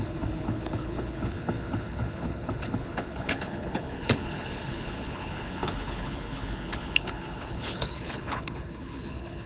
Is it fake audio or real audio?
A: fake